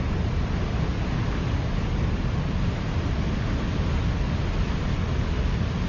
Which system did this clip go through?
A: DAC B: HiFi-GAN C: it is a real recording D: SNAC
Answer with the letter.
C